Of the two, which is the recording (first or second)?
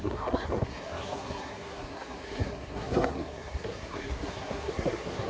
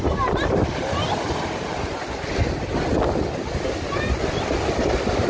second